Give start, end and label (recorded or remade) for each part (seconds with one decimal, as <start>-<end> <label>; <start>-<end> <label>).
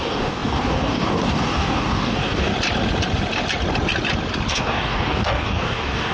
0.0-2.5 remade; 2.5-4.5 recorded; 4.5-6.1 remade